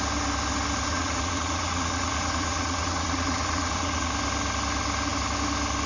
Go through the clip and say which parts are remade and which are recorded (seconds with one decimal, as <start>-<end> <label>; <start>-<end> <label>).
0.0-0.9 recorded; 0.9-4.1 remade; 4.1-5.9 recorded